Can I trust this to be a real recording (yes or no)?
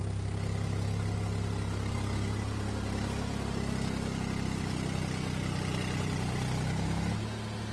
yes